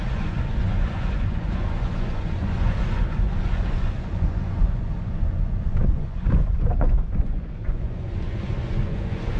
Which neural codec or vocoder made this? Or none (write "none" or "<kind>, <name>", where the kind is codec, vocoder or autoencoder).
vocoder, Vocos